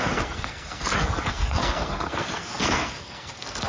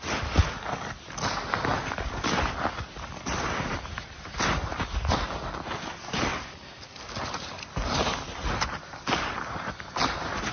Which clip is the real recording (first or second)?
second